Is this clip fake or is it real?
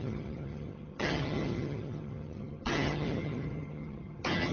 fake